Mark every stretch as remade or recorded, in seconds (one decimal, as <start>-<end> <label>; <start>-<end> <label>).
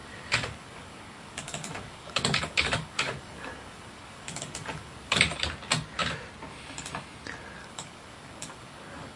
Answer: 0.0-5.2 remade; 5.2-7.6 recorded; 7.6-9.2 remade